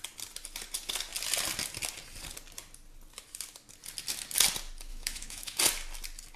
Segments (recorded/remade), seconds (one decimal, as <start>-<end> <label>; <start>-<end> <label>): 0.0-4.9 recorded; 4.9-5.6 remade; 5.6-6.4 recorded